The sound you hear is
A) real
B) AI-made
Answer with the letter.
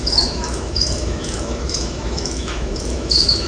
B